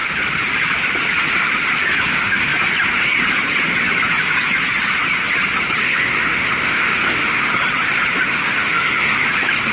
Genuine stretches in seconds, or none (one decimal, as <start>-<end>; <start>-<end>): 0.0-2.1; 2.5-5.8; 7.5-8.3; 9.2-9.7